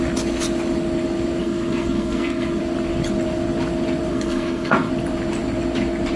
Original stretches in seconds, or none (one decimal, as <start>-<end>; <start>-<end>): 0.0-1.4; 2.6-4.1; 4.9-6.2